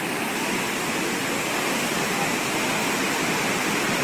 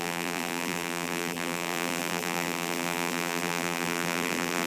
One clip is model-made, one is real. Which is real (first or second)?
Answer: first